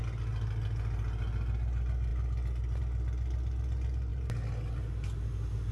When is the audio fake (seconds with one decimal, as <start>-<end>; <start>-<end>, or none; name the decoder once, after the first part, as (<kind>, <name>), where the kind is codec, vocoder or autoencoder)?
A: none